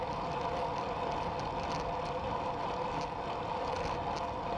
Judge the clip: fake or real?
real